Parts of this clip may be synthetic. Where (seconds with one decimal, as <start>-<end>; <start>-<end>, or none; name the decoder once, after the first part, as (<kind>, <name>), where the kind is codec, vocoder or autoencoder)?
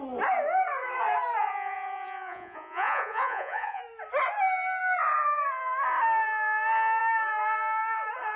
1.4-3.8 (vocoder, Vocos)